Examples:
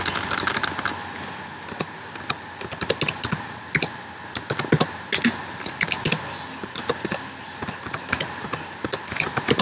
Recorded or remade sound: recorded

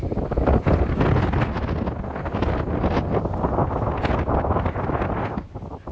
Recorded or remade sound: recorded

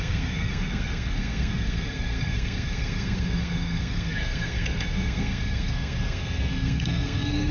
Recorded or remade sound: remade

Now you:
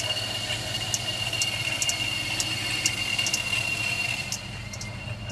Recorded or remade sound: recorded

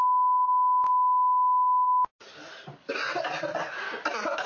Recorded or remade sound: recorded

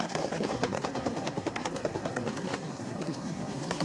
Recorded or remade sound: remade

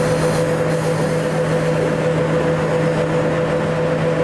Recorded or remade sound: recorded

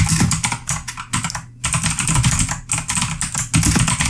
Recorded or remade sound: recorded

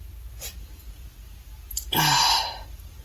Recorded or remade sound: recorded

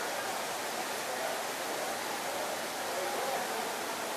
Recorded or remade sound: recorded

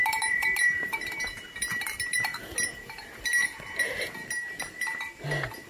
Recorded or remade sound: recorded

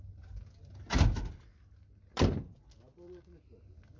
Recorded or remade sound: recorded